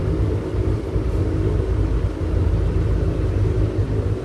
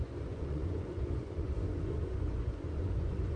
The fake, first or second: second